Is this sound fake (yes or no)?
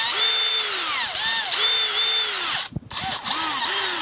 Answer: no